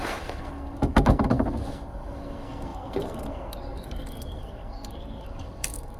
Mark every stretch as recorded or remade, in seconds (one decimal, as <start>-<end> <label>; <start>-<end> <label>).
0.0-6.0 remade